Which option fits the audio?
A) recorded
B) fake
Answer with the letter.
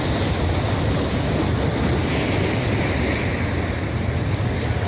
A